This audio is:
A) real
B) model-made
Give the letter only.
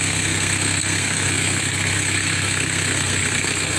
B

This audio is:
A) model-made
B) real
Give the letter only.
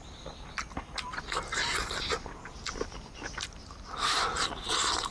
B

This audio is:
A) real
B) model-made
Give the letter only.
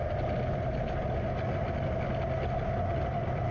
A